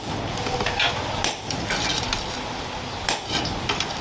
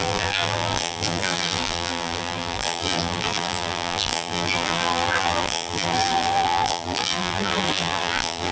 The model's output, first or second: second